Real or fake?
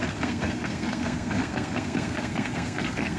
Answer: fake